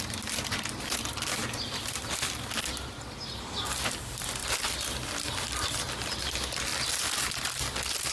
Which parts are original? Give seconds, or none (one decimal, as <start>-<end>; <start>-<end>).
0.0-6.7; 7.5-8.1

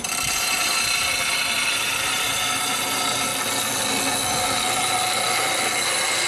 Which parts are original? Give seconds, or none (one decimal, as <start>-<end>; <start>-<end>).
3.3-6.3

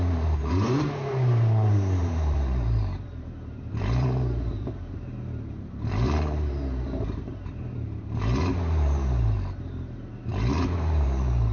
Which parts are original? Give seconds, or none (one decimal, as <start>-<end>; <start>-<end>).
none

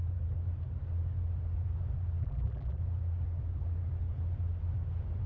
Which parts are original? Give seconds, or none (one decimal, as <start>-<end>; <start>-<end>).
0.0-2.2; 2.8-5.3